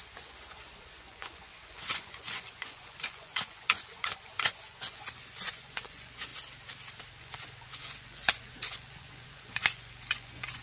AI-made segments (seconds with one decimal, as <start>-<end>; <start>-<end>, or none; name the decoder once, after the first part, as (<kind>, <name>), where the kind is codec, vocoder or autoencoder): 0.0-6.3 (vocoder, Vocos); 7.2-10.6